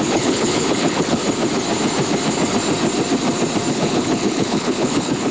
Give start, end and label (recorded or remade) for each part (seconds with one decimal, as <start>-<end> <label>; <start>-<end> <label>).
0.0-1.2 remade; 1.2-3.7 recorded; 3.7-5.3 remade